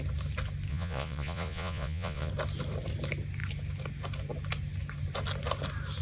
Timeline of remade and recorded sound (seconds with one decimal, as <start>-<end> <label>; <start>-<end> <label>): 0.0-0.7 recorded; 0.7-2.3 remade; 2.3-6.0 recorded